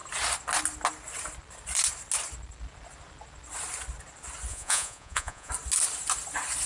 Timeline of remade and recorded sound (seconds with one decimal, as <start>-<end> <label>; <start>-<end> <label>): 0.0-4.5 recorded; 4.5-5.5 remade; 5.5-6.7 recorded